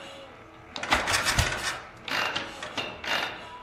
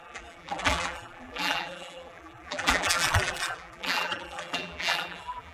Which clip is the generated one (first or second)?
second